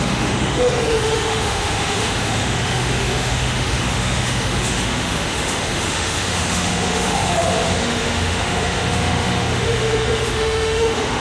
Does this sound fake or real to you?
fake